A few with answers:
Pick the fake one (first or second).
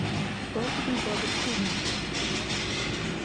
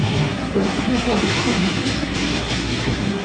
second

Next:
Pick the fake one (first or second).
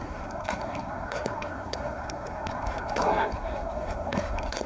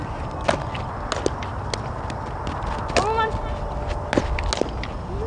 first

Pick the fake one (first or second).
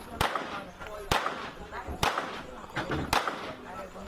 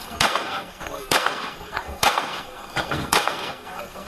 second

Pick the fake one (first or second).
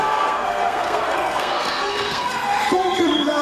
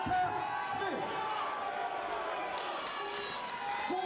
first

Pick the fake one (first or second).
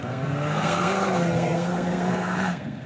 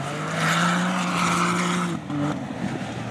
first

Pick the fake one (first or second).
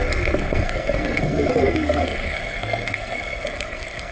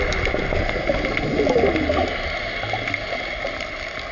first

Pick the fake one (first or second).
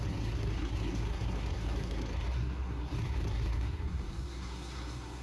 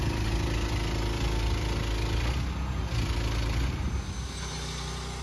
first